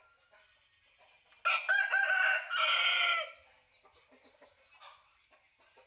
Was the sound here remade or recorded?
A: recorded